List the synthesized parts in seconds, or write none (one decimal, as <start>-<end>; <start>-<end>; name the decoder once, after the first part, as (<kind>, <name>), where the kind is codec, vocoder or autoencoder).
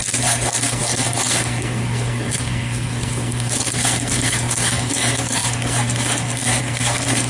0.0-7.3 (codec, SNAC)